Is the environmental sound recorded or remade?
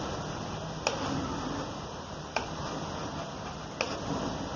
recorded